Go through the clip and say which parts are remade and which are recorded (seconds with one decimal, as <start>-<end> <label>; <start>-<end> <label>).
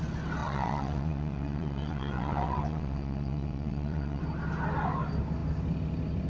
0.0-0.4 recorded; 0.4-4.2 remade; 4.2-6.3 recorded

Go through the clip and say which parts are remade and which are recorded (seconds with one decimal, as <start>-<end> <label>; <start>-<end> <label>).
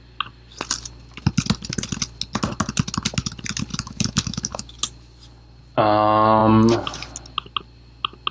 0.0-3.7 recorded; 3.7-4.8 remade; 4.8-8.3 recorded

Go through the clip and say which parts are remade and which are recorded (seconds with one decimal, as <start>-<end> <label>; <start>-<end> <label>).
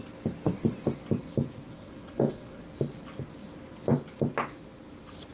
0.0-1.7 recorded; 1.7-2.6 remade; 2.6-5.3 recorded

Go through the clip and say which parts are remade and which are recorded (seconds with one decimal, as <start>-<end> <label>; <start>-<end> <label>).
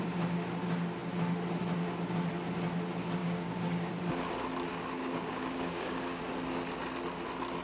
0.0-3.2 recorded; 3.2-3.9 remade; 3.9-4.7 recorded; 4.7-6.2 remade; 6.2-7.6 recorded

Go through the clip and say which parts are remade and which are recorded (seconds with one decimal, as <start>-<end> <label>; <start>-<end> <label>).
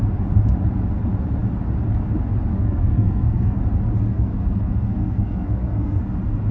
0.0-2.5 recorded; 2.5-3.6 remade; 3.6-4.1 recorded; 4.1-6.0 remade; 6.0-6.5 recorded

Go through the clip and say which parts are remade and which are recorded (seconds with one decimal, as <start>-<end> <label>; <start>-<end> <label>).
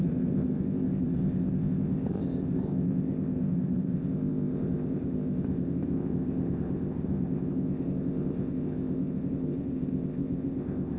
0.0-11.0 remade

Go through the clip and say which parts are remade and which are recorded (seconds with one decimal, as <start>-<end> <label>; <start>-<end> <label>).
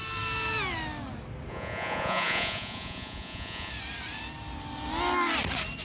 0.0-1.5 recorded; 1.5-3.7 remade; 3.7-5.8 recorded